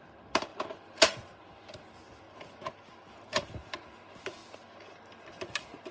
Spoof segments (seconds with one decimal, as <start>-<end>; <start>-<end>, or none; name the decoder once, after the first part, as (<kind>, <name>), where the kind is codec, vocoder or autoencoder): none